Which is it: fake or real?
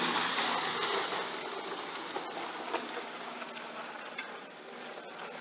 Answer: real